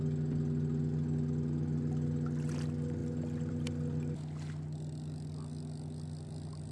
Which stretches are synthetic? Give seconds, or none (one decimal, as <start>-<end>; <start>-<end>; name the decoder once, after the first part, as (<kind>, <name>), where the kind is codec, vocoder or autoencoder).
none